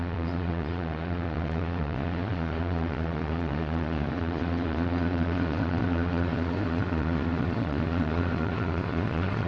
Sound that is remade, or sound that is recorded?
remade